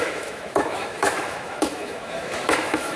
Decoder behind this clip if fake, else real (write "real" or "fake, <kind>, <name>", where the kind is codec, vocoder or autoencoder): fake, autoencoder, DAC-VAE